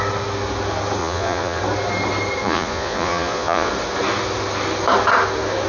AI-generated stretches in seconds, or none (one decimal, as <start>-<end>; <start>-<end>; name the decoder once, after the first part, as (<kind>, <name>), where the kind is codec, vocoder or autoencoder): 1.0-1.6 (vocoder, Vocos); 2.4-3.7